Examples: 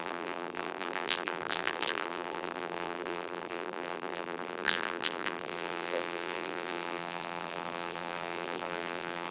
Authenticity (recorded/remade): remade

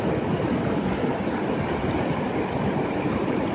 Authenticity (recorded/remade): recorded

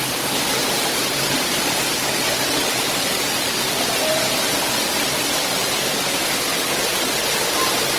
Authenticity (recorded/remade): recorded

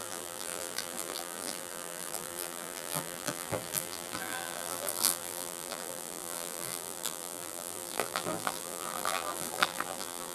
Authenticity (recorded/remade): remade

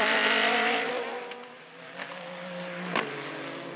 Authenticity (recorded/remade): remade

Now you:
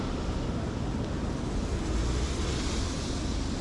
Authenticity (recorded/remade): recorded